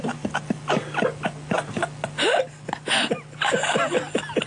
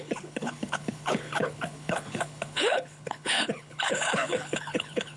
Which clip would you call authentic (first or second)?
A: first